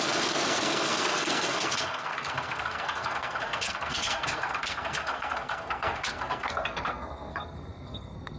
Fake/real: fake